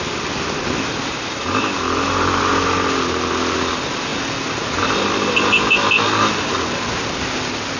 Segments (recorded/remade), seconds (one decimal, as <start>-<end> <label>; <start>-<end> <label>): 0.0-7.8 recorded